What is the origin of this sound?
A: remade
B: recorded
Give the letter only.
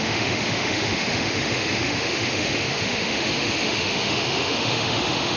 A